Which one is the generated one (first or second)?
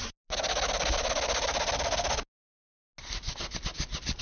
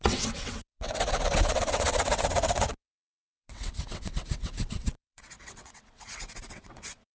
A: second